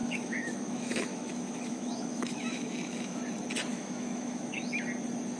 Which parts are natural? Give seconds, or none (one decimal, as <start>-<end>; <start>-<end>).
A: 3.2-3.7; 4.8-5.4